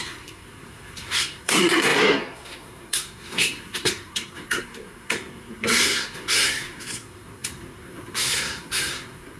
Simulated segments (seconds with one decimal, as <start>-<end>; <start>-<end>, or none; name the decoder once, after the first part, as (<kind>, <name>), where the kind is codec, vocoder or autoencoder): 0.0-9.4 (codec, SNAC)